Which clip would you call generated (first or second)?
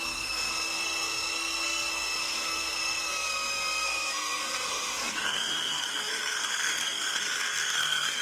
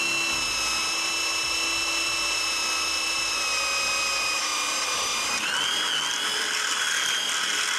first